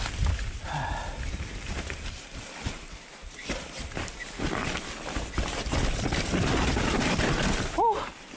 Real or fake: real